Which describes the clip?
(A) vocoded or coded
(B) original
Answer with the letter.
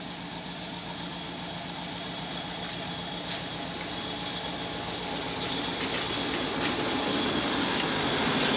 B